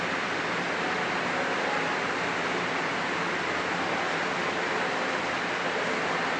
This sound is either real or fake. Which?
real